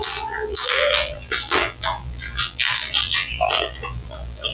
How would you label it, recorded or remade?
remade